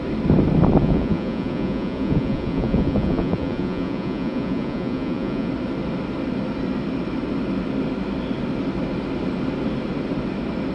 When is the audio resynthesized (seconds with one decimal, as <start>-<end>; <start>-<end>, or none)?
0.8-5.5